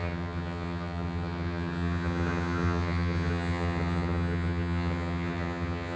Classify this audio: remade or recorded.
remade